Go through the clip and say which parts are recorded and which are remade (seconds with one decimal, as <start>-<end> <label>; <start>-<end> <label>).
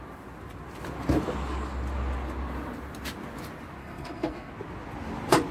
0.0-3.8 recorded; 3.8-4.5 remade; 4.5-5.5 recorded